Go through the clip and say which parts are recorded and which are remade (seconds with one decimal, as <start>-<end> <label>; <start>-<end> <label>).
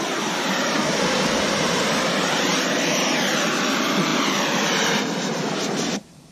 0.0-6.3 remade